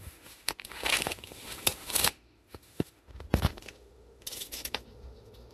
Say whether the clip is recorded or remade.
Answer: remade